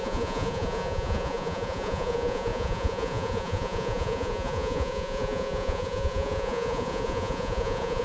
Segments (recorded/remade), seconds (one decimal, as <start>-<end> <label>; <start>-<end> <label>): 0.0-8.0 remade